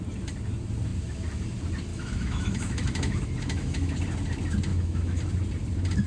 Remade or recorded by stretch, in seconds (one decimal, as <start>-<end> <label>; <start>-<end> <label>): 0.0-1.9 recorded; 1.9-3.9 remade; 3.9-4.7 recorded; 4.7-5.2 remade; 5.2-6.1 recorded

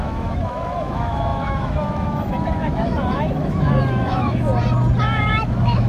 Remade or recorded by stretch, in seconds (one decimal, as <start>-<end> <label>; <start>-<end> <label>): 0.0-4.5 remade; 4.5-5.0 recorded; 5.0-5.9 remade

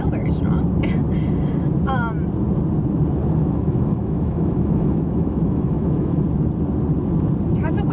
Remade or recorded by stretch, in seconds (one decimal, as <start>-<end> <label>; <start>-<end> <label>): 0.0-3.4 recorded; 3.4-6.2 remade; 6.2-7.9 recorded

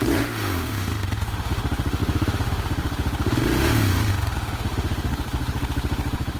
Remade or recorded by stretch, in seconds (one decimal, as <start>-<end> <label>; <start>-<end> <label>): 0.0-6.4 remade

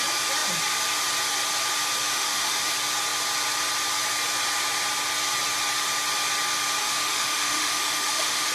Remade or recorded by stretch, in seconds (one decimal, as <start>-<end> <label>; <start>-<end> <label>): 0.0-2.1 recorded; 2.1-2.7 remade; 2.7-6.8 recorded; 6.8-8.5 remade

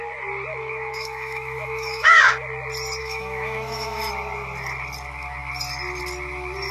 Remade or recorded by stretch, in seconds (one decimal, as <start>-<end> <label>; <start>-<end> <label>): 0.0-0.5 recorded; 0.5-2.2 remade; 2.2-3.0 recorded; 3.0-4.1 remade; 4.1-6.7 recorded